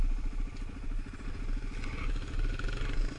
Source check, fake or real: real